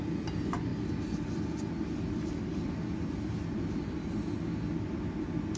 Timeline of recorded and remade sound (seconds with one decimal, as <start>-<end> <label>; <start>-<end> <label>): 0.0-5.6 recorded